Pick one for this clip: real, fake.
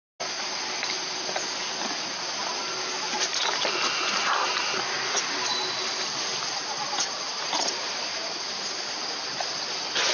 real